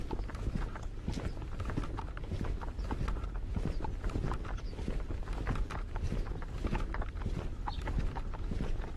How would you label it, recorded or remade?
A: recorded